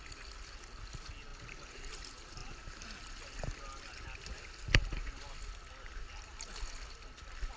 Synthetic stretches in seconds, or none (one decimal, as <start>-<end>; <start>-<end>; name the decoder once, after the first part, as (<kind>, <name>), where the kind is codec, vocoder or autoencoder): none